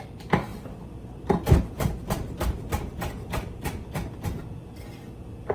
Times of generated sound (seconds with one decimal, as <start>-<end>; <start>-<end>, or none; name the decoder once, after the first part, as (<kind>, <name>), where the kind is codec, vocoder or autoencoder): 0.5-2.0 (vocoder, BigVGAN v2)